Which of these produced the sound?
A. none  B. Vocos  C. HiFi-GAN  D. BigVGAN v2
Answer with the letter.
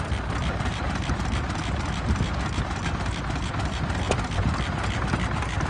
D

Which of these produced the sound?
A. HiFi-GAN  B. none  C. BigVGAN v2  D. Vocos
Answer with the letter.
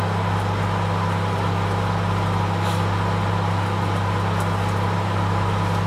B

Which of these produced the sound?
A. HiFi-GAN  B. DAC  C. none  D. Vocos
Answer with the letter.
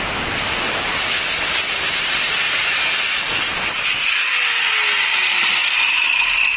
C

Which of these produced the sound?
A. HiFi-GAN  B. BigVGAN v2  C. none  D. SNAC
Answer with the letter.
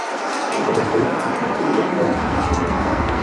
D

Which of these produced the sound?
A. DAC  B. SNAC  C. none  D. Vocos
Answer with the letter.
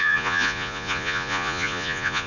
D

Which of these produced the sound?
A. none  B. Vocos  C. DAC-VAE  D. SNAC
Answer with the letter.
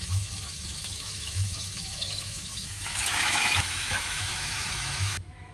C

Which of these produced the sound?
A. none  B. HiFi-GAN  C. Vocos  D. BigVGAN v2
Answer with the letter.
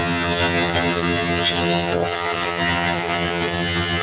B